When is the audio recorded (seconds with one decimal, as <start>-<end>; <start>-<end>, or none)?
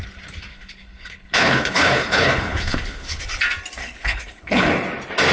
0.0-0.5; 3.2-3.8; 4.7-5.3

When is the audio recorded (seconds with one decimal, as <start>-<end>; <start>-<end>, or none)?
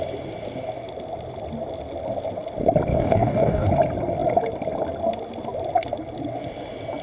0.0-2.9; 3.7-7.0